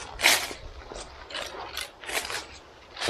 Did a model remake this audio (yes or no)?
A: no